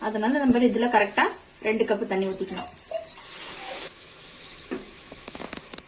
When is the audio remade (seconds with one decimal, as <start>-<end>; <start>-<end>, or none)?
3.6-5.4